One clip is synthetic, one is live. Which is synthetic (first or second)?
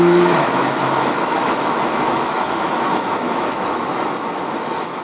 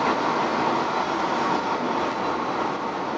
first